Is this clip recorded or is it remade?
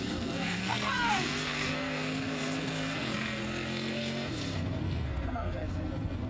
remade